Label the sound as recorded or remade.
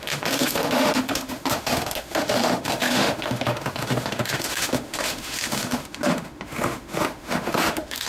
remade